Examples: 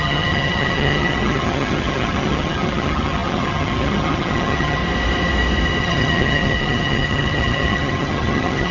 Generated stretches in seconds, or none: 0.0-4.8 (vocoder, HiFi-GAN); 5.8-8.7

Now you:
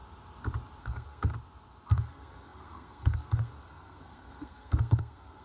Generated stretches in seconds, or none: 0.8-1.3 (codec, SNAC); 1.9-5.4

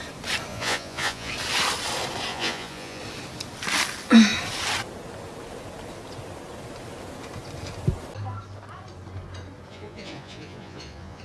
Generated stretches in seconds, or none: 0.5-1.3 (vocoder, Vocos); 2.3-3.0; 9.7-11.2

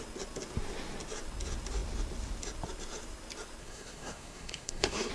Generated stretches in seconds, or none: 3.6-5.1 (codec, SNAC)

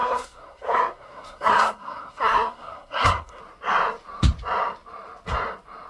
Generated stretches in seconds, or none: 0.0-3.4 (codec, SNAC)

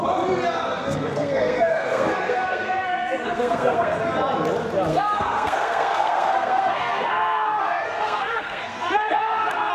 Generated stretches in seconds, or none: 0.7-4.0 (codec, SNAC); 4.9-9.7

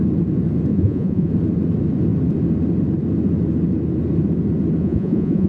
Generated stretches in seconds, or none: 0.7-1.3 (vocoder, Vocos); 4.8-5.5

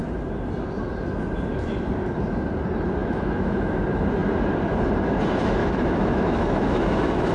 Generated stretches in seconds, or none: 3.0-3.8 (autoencoder, DAC-VAE); 5.6-7.3